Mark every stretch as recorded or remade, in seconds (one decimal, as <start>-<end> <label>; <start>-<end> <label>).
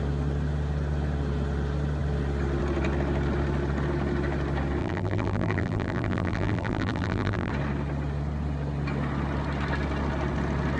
0.0-4.8 recorded; 4.8-7.5 remade; 7.5-10.8 recorded